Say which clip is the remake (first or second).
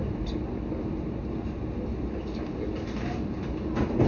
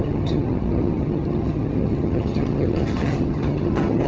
second